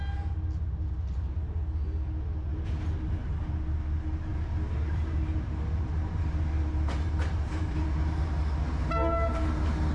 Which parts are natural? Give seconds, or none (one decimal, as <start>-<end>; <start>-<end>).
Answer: 0.0-2.5; 3.5-4.3; 8.3-9.9